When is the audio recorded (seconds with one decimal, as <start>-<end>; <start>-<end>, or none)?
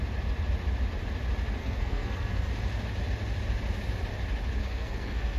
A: 0.0-1.6; 2.5-4.6